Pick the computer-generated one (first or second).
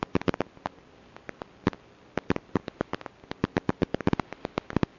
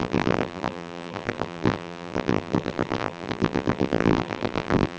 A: second